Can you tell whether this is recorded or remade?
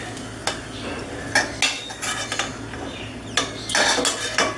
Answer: recorded